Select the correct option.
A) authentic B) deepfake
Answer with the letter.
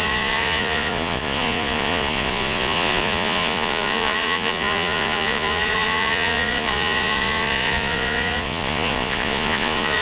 B